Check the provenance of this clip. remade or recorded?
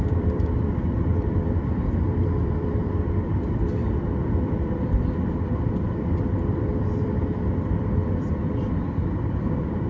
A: remade